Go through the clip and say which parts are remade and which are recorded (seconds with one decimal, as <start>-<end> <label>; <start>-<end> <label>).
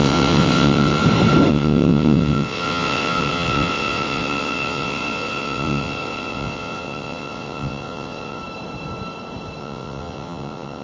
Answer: 0.0-1.0 remade; 1.0-1.5 recorded; 1.5-8.4 remade; 8.4-9.6 recorded; 9.6-10.8 remade